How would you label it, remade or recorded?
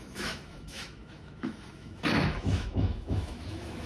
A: remade